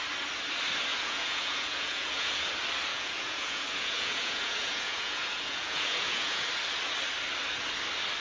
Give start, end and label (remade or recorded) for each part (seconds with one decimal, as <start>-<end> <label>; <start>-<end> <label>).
0.0-0.9 recorded; 0.9-2.5 remade; 2.5-2.9 recorded; 2.9-6.5 remade; 6.5-8.2 recorded